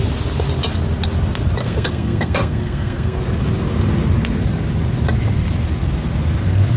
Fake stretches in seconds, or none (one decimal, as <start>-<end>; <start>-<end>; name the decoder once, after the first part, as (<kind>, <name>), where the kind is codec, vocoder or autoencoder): 1.6-3.2 (codec, SNAC)